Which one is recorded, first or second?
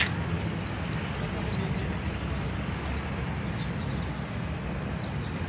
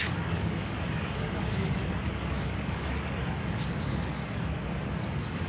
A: first